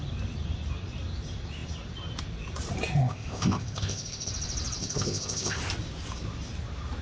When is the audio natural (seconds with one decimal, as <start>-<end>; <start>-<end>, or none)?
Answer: 0.0-3.0; 4.3-4.8; 5.6-7.0